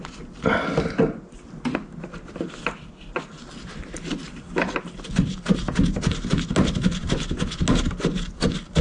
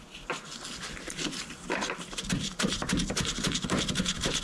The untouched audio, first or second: first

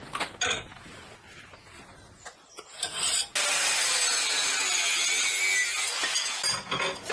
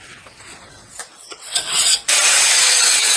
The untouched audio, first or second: first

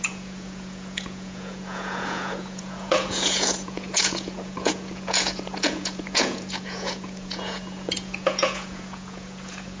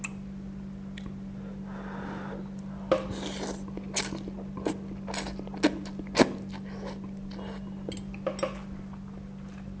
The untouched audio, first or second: second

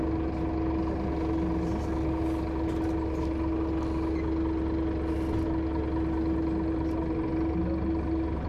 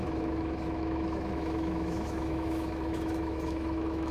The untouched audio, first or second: first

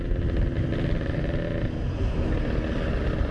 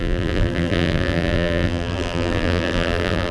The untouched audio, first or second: first